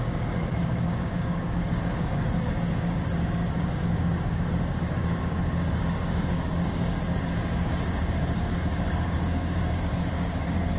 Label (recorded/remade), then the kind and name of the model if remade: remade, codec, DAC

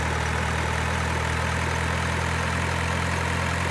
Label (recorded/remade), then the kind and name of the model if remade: remade, vocoder, BigVGAN v2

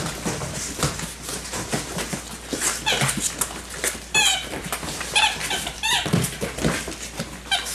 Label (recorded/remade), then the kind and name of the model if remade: recorded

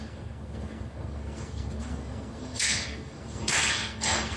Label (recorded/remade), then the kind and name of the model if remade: remade, codec, SNAC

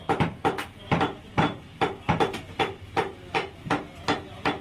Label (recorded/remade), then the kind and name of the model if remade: recorded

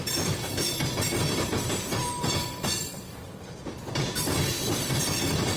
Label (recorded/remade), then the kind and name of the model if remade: remade, vocoder, BigVGAN v2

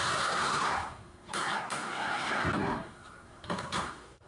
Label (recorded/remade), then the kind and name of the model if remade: remade, codec, SNAC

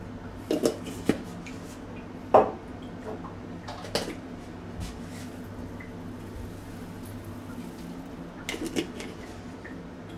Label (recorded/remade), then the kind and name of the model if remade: recorded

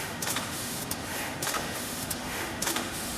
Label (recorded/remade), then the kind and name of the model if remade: remade, autoencoder, DAC-VAE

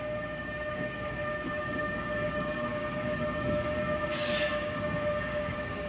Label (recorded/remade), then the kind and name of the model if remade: remade, codec, DAC